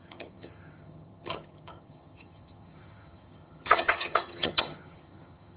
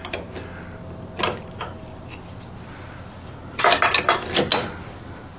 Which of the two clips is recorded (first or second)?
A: second